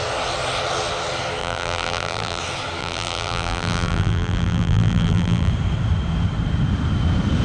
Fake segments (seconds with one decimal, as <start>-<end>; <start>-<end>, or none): 1.4-2.4; 2.8-5.5